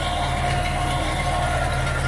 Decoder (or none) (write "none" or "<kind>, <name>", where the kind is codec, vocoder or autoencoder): none